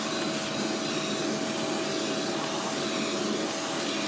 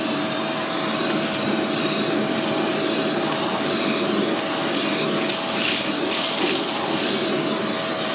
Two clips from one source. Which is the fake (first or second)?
second